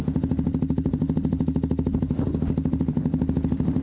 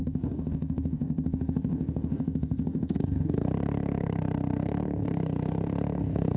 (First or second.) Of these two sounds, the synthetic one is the second